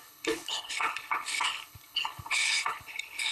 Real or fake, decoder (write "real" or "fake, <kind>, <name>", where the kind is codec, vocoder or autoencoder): fake, codec, HILCodec